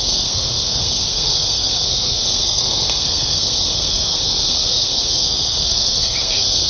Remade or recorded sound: remade